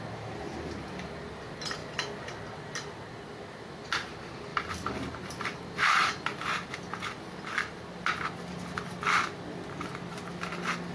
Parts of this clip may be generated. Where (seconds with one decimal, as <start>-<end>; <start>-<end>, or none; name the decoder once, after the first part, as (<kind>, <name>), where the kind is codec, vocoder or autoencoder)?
4.5-5.3 (vocoder, BigVGAN v2)